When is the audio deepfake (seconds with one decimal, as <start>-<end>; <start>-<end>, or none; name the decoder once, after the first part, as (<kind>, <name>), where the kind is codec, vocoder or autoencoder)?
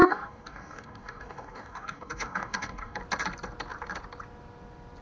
0.0-3.0 (codec, DAC)